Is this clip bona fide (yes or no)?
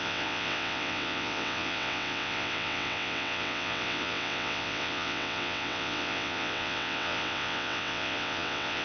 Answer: no